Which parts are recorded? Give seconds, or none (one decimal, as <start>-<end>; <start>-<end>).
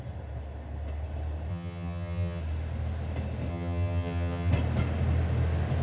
0.0-1.5; 2.4-3.5; 4.5-5.8